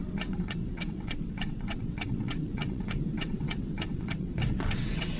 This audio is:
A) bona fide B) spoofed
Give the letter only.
B